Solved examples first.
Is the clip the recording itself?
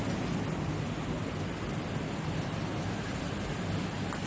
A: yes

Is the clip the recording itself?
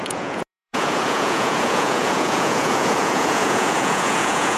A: no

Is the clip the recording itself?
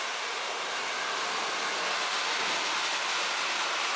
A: yes